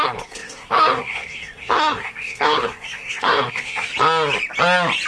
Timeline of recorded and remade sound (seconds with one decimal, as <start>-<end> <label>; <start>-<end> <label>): 0.0-3.9 remade; 3.9-5.1 recorded